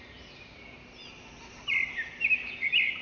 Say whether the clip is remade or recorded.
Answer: recorded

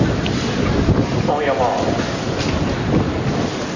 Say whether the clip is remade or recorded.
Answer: recorded